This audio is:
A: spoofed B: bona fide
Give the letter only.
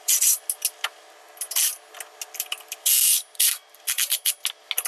B